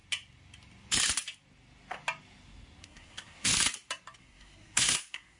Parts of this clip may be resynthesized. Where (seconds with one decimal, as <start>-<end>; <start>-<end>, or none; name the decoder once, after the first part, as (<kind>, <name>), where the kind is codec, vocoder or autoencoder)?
2.8-3.5 (codec, SNAC); 4.2-5.4